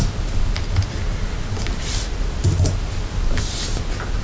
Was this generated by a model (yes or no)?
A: no